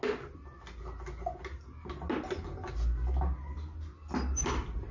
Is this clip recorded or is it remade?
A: recorded